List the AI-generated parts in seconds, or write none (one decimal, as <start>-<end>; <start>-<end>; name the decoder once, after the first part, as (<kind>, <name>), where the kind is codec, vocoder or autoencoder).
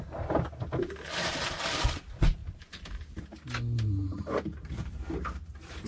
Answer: 2.4-5.9 (vocoder, BigVGAN v2)